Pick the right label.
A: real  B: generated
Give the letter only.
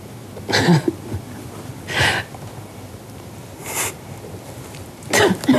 A